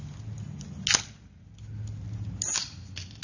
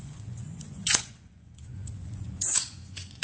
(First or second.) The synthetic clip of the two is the second